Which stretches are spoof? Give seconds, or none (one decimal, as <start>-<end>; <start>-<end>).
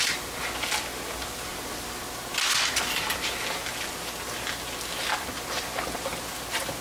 none